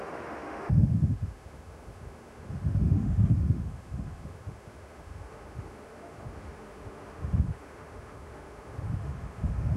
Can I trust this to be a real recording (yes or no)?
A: no